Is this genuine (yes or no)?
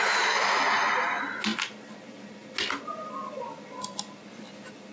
yes